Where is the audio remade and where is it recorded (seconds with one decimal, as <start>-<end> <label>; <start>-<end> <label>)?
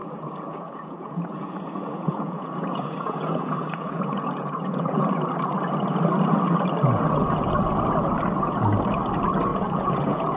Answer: 0.0-5.1 remade; 5.1-9.5 recorded; 9.5-10.4 remade